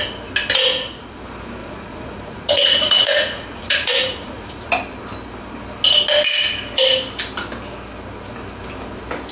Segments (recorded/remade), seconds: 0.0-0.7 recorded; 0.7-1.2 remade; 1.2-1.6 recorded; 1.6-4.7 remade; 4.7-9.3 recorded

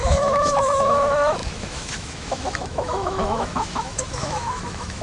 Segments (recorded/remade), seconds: 0.0-5.0 remade